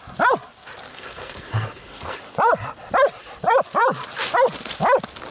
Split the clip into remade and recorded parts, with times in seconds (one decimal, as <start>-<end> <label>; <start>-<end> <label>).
0.0-0.9 recorded; 0.9-2.2 remade; 2.2-5.3 recorded